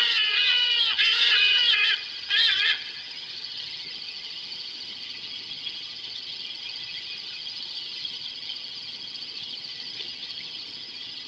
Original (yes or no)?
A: no